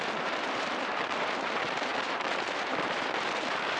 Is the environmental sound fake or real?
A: fake